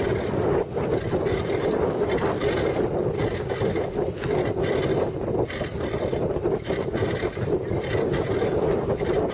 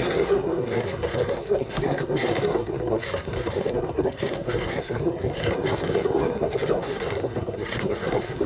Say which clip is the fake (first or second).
second